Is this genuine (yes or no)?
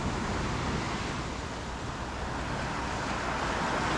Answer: yes